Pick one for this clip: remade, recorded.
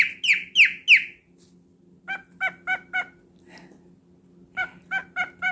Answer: recorded